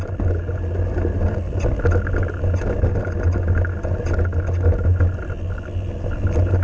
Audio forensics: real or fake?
real